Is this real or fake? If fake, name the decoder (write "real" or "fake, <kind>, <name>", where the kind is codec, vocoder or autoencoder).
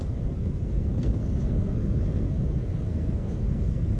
fake, codec, SNAC